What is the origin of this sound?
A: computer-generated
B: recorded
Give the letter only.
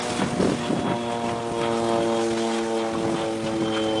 B